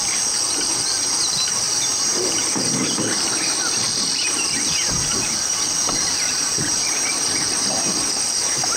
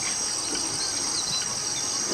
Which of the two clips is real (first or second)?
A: second